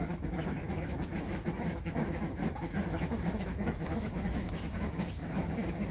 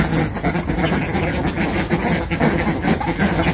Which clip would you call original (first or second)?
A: second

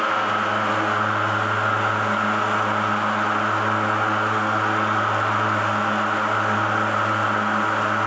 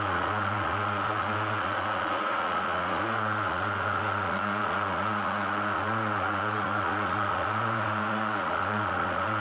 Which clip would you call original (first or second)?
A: first